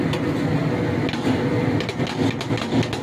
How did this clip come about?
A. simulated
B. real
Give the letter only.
B